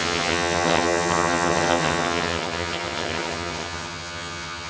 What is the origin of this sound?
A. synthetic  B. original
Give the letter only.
A